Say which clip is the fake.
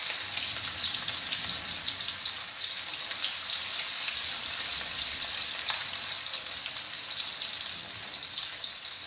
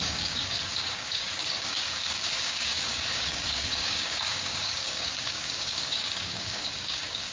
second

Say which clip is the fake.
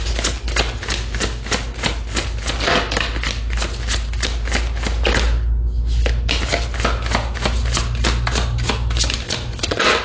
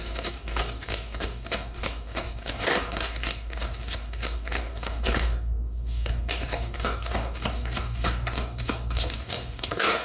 second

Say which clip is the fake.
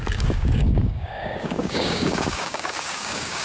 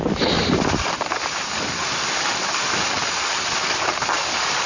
first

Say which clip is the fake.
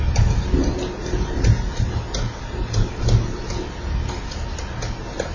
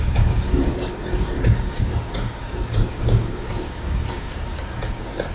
second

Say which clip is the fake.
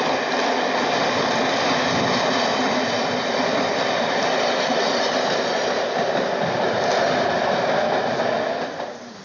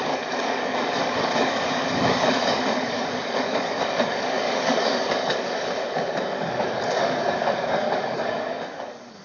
second